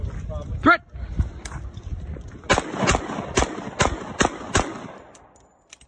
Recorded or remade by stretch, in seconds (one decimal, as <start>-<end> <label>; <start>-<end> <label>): 0.0-5.9 recorded